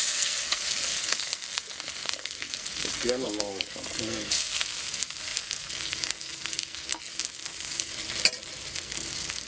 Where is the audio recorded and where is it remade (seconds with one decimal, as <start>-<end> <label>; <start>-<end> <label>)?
0.0-7.9 remade; 7.9-8.7 recorded; 8.7-9.5 remade